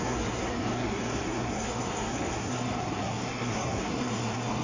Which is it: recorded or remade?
remade